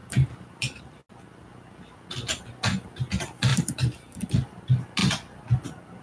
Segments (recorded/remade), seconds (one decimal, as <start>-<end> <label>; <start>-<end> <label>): 0.0-0.8 remade; 0.8-3.5 recorded; 3.5-4.2 remade; 4.2-6.0 recorded